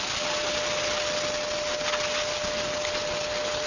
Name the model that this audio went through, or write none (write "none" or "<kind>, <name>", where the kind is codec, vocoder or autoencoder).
none